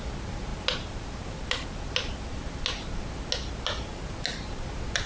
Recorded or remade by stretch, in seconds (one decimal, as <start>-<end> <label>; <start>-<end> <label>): 0.0-5.1 recorded